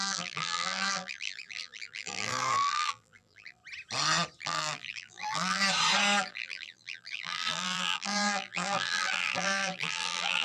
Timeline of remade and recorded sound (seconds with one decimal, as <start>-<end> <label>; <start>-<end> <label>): 0.0-3.6 remade; 3.6-4.4 recorded; 4.4-5.6 remade; 5.6-6.2 recorded; 6.2-10.4 remade